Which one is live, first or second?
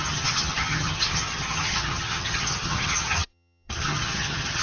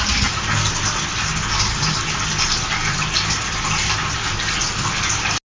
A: second